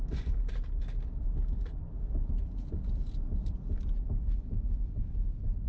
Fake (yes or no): yes